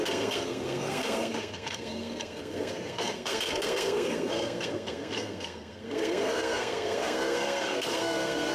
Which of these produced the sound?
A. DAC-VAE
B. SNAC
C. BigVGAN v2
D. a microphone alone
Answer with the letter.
B